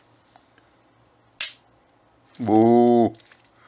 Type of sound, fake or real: real